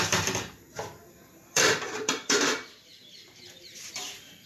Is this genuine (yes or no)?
no